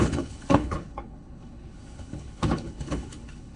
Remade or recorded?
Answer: remade